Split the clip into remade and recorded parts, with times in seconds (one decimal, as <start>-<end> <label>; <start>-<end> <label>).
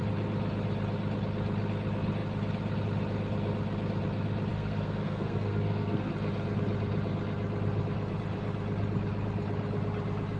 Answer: 0.0-4.5 recorded; 4.5-6.1 remade; 6.1-10.4 recorded